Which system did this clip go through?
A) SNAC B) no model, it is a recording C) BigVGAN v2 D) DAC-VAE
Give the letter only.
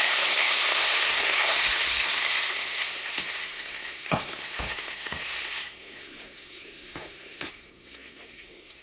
A